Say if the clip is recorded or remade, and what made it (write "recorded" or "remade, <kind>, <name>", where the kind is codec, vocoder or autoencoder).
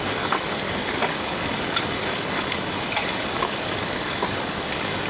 remade, codec, DAC